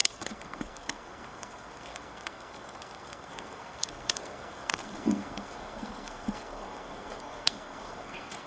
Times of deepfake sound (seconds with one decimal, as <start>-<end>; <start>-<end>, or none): 0.0-8.5